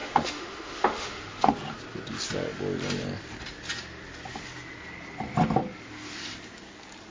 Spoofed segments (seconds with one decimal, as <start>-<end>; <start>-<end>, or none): 0.0-1.5